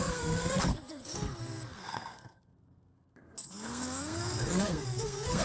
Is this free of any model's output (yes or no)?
no